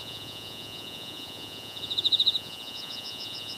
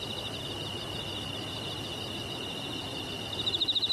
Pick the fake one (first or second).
first